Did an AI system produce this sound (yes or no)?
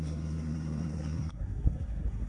yes